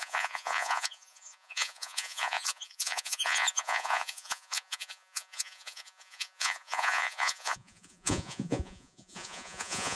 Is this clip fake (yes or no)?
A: yes